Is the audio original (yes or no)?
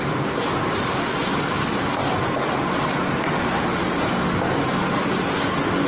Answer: yes